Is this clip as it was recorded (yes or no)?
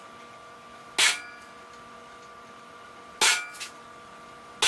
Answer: yes